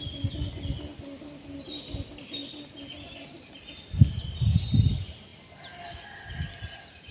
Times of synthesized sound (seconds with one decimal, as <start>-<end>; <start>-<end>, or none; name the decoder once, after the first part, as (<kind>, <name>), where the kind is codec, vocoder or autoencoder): none

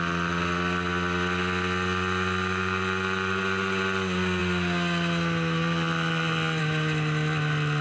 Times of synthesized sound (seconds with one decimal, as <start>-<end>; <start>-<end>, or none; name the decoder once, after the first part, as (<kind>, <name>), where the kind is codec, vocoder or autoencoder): none

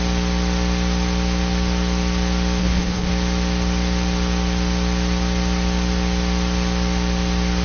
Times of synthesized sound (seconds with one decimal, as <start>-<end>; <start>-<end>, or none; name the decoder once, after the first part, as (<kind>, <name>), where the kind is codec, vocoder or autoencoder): 2.6-3.1 (codec, HILCodec)